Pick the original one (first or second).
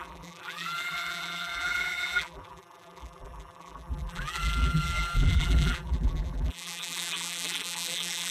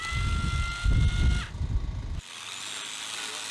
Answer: second